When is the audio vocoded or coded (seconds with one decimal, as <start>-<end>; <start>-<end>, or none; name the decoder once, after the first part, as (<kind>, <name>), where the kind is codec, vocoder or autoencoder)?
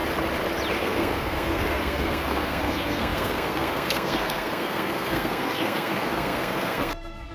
0.7-7.3 (codec, SNAC)